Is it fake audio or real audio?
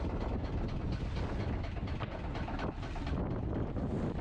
real